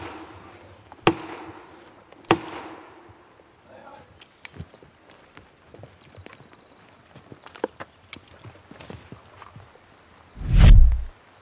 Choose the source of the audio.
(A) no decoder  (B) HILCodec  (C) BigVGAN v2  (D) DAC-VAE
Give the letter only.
A